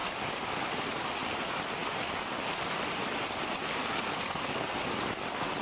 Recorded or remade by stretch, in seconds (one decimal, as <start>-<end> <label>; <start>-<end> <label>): 0.0-3.8 recorded; 3.8-4.5 remade; 4.5-5.6 recorded